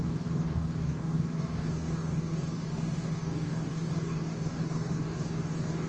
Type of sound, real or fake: fake